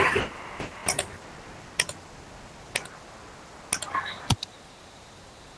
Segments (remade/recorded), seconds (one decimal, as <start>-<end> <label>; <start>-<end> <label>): 0.0-0.8 remade; 0.8-4.2 recorded; 4.2-5.6 remade